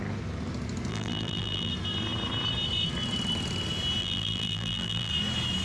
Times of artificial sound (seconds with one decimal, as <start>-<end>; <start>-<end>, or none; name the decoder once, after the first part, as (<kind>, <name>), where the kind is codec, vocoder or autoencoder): 0.9-1.7 (vocoder, BigVGAN v2); 4.0-5.1